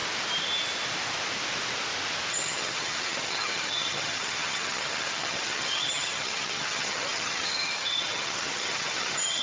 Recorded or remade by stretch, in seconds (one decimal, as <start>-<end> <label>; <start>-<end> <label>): 0.0-2.3 recorded; 2.3-9.4 remade